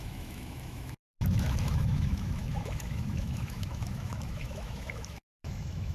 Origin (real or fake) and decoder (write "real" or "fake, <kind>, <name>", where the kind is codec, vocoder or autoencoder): fake, autoencoder, DAC-VAE